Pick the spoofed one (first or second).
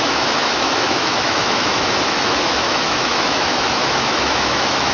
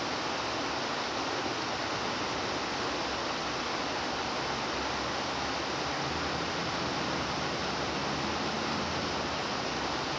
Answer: first